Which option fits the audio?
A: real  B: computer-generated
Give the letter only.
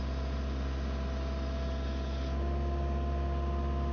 A